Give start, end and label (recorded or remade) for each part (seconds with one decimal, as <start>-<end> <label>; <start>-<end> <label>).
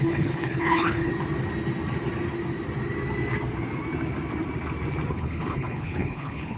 0.0-1.1 remade; 1.1-5.1 recorded; 5.1-6.6 remade